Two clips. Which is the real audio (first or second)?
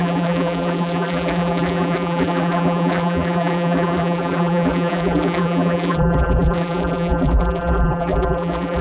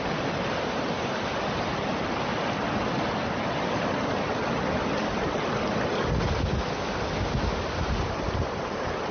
second